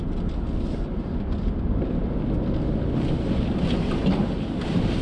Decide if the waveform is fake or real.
real